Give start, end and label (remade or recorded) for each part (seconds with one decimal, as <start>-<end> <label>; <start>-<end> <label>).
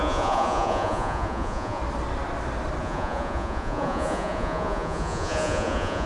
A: 0.0-1.8 remade; 1.8-2.8 recorded; 2.8-6.1 remade